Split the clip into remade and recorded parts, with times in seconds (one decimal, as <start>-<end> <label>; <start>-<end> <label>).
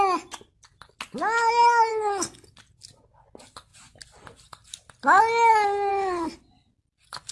0.0-1.9 recorded; 1.9-2.5 remade; 2.5-5.9 recorded; 5.9-6.4 remade; 6.4-7.3 recorded